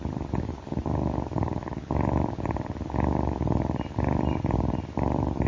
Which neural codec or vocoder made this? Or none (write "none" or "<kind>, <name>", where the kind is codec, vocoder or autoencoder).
none